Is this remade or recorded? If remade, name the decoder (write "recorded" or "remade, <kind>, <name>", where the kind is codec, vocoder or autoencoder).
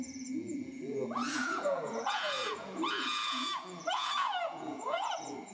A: remade, vocoder, Vocos